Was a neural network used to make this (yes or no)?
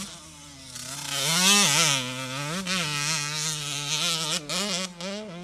no